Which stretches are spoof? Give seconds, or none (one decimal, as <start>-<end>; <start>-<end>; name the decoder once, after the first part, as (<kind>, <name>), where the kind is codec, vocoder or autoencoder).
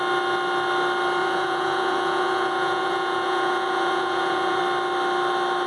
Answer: 1.2-4.6 (vocoder, Vocos)